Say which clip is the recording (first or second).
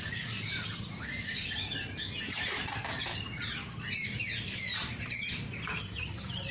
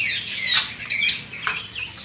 second